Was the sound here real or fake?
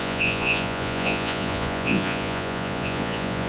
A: fake